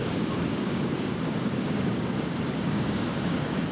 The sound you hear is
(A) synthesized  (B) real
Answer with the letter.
A